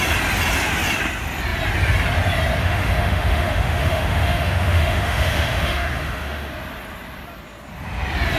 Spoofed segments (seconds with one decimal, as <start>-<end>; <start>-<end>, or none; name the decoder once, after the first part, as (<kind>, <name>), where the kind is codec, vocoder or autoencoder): 2.6-6.5 (autoencoder, DAC-VAE)